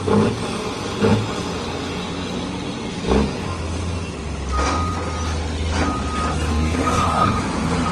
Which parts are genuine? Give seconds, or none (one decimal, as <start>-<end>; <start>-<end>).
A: 0.0-6.5; 7.4-7.9